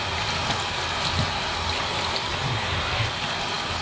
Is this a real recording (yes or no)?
yes